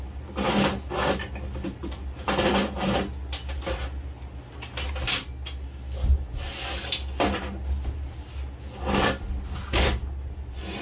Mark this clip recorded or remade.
recorded